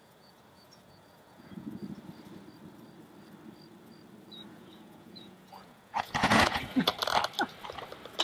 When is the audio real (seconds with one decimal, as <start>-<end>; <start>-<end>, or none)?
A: 1.8-4.3; 6.9-8.2